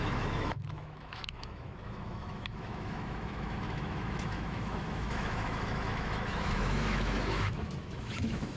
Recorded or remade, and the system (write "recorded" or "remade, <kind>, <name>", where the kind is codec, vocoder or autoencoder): remade, autoencoder, DAC-VAE